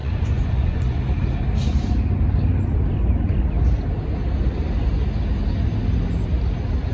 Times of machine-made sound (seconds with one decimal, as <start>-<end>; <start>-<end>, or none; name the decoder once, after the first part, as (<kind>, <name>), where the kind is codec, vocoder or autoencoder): 0.0-1.0 (vocoder, Vocos)